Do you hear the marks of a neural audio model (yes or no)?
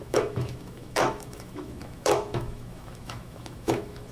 yes